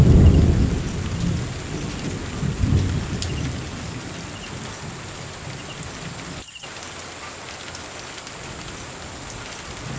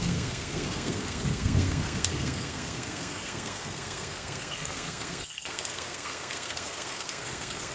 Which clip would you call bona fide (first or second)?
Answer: first